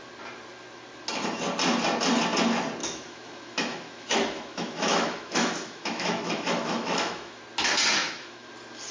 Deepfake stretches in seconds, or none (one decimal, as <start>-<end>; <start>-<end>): 2.8-7.4; 8.0-8.5